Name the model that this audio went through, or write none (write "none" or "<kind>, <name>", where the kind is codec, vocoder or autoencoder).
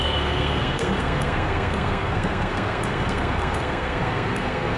codec, SNAC